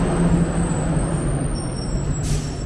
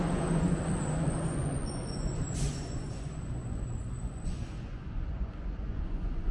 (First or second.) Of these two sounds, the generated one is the second